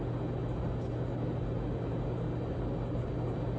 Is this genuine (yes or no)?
yes